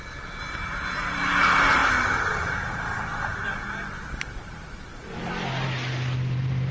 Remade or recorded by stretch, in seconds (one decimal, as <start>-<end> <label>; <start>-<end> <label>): 0.0-1.8 recorded; 1.8-2.7 remade; 2.7-3.1 recorded; 3.1-5.3 remade; 5.3-6.7 recorded